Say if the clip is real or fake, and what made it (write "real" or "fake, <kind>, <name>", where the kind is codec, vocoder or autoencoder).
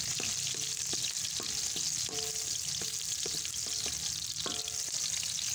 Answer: real